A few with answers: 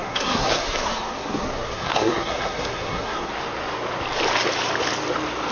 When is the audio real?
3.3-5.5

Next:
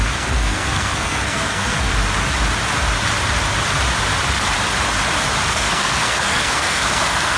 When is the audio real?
1.9-5.5

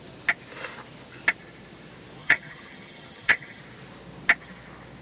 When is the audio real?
0.0-2.2; 3.6-5.0

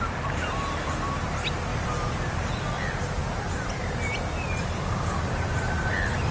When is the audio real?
0.0-6.3

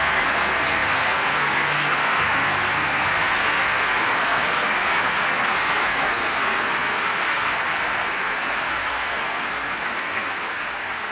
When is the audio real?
none

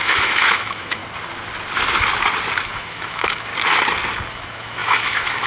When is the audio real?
1.0-2.6; 3.5-4.3